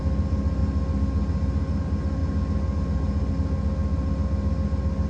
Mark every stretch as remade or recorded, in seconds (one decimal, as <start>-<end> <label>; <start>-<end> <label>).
0.0-5.1 recorded